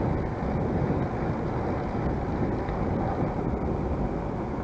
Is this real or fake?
real